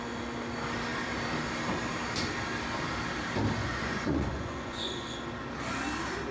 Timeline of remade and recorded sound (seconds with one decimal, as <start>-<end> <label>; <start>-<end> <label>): 0.0-3.6 recorded; 3.6-5.2 remade; 5.2-6.3 recorded

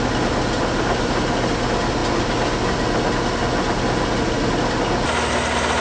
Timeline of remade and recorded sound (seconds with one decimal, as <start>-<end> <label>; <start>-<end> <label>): 0.0-5.8 recorded

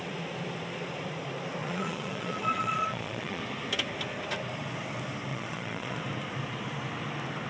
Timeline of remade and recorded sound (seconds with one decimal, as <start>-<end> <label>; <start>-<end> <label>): 0.0-1.6 recorded; 1.6-3.4 remade; 3.4-5.3 recorded; 5.3-6.0 remade; 6.0-7.5 recorded

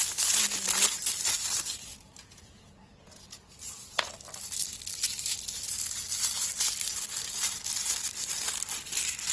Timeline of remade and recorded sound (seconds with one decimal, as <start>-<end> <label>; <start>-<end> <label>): 0.0-2.2 recorded; 2.2-4.1 remade; 4.1-9.3 recorded

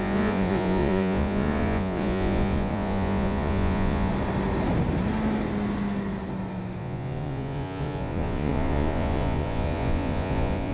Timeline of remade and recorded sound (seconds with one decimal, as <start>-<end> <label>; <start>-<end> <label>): 0.0-4.1 remade; 4.1-6.8 recorded; 6.8-10.7 remade